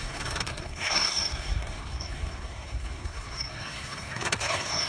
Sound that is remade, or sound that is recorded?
remade